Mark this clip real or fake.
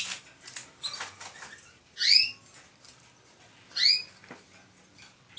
real